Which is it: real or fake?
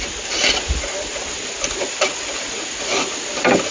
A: real